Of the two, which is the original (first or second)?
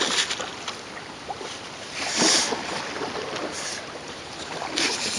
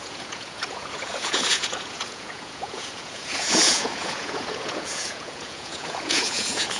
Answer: first